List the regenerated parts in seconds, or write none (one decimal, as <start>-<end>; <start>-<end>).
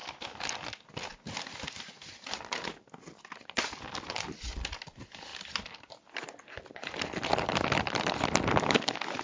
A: none